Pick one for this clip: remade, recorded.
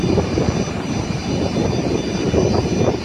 recorded